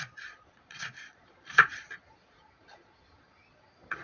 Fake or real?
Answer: fake